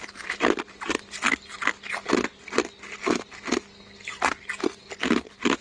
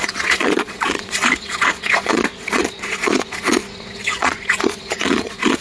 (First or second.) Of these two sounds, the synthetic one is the second